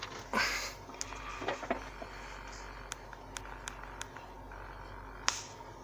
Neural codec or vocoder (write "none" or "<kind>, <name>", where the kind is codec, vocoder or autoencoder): none